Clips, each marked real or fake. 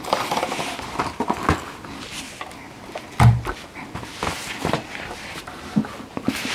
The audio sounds real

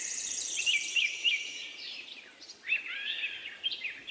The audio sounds fake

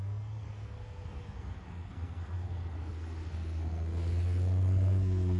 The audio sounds fake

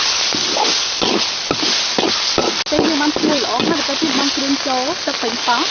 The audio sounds real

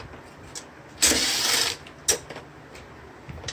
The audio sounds real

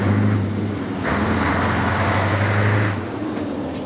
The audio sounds real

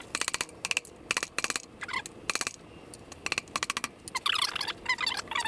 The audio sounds real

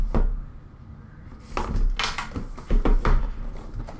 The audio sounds real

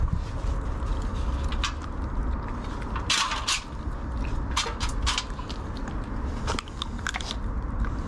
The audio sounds real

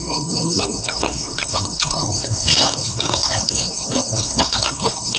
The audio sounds fake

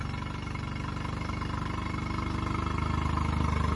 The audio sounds real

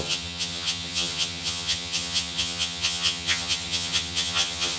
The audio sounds fake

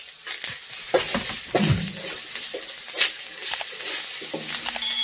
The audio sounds real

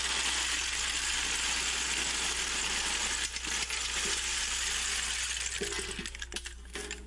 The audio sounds real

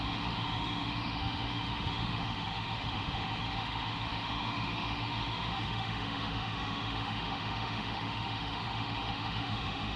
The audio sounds fake